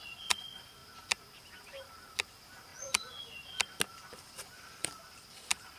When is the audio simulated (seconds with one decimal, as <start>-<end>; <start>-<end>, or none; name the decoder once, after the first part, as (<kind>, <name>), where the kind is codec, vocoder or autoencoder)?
0.0-0.8 (vocoder, BigVGAN v2); 1.6-2.7; 4.1-5.8